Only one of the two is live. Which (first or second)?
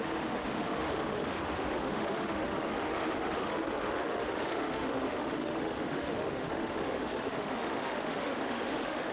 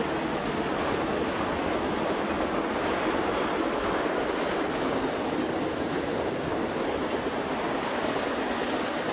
second